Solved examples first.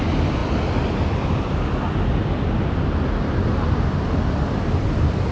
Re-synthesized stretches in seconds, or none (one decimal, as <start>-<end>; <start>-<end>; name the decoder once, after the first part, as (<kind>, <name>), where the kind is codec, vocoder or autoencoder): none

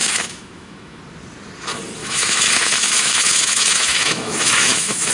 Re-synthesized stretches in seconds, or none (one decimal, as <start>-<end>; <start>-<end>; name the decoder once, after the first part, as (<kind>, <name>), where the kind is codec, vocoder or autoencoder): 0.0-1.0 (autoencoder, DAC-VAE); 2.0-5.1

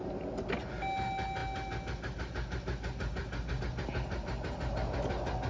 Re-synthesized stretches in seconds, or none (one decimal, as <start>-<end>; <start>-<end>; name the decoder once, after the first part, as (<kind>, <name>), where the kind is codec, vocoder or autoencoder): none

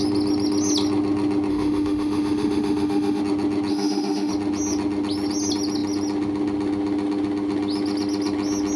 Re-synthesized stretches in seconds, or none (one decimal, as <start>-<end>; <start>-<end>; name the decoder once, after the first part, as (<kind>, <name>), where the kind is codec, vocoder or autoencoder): 1.5-3.2 (autoencoder, DAC-VAE); 3.7-4.3